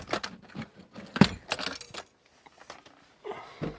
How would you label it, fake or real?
real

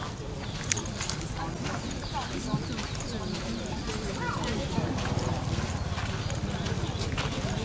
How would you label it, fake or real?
real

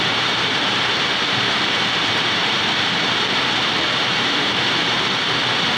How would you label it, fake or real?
fake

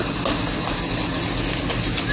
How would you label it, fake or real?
real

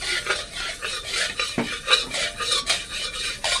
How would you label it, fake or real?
real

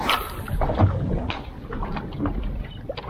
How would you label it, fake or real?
real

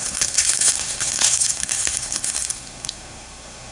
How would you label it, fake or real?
fake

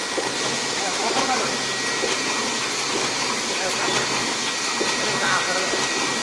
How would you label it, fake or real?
real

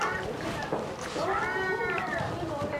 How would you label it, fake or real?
real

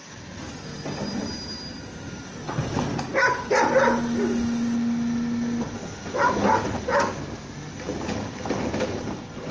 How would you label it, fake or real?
real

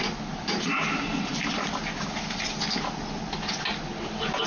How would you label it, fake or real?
real